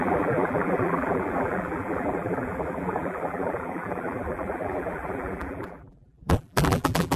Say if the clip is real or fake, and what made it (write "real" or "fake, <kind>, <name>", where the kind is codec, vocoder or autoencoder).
fake, vocoder, BigVGAN v2